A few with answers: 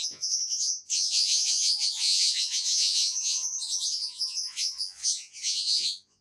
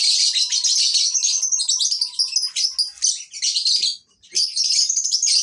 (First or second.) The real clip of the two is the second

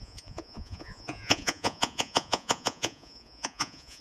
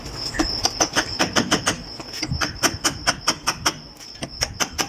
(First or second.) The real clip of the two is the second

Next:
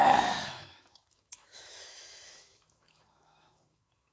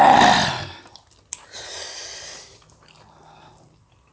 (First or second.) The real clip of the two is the second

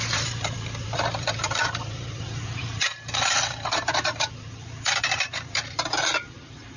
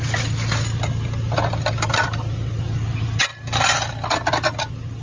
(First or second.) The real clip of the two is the second